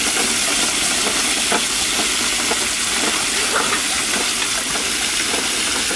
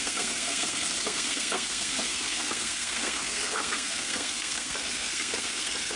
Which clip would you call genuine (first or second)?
first